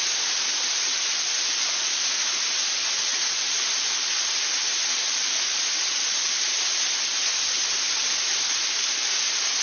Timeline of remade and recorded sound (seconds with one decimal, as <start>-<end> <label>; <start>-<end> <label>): 0.0-9.6 recorded

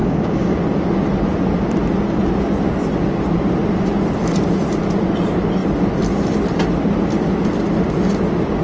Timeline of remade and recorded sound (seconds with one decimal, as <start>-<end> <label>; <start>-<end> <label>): 0.0-0.6 remade; 0.6-8.6 recorded